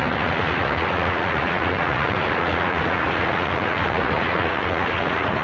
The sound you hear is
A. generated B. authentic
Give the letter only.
A